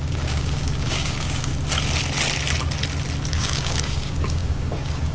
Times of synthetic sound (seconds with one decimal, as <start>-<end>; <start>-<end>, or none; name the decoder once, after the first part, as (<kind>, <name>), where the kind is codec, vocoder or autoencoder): 0.0-1.5 (codec, DAC); 3.3-5.1